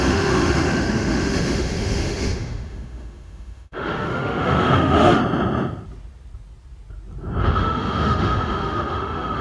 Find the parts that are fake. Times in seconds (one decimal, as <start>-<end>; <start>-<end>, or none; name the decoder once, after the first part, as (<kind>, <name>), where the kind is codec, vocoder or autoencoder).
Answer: 0.0-5.2 (autoencoder, DAC-VAE); 7.4-9.4